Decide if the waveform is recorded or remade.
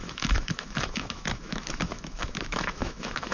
remade